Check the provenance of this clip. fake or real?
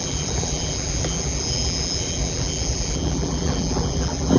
fake